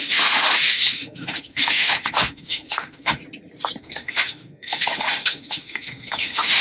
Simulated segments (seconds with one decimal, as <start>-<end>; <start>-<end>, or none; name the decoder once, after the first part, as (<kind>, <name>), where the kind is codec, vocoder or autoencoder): 0.0-3.2 (autoencoder, DAC-VAE); 3.8-6.6